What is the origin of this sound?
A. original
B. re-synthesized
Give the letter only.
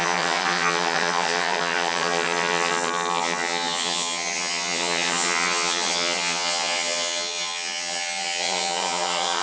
B